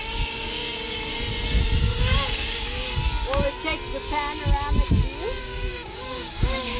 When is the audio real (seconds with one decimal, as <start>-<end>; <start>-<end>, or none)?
1.1-1.8; 3.0-5.4